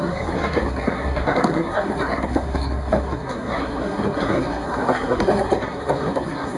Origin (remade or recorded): remade